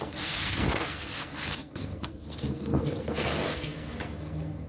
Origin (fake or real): fake